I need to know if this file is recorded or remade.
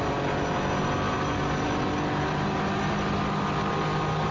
recorded